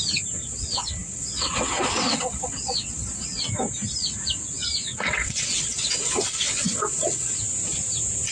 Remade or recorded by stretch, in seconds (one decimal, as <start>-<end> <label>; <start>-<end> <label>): 0.0-0.4 recorded; 0.4-3.4 remade; 3.4-4.9 recorded; 4.9-7.3 remade; 7.3-8.3 recorded